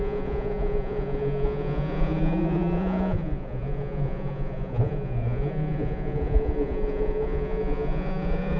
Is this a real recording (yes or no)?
no